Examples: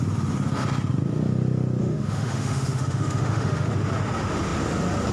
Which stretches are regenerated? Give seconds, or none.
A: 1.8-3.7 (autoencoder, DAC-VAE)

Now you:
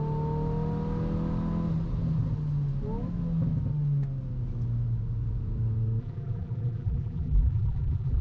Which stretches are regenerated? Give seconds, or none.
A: 6.0-8.2 (vocoder, BigVGAN v2)

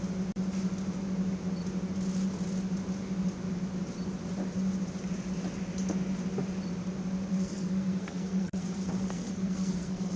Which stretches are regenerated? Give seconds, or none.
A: 7.3-10.2 (codec, SNAC)